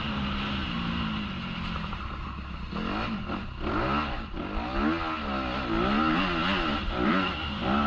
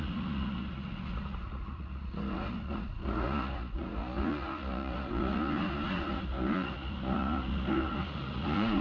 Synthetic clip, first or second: second